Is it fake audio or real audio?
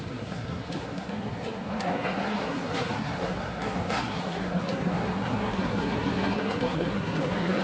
fake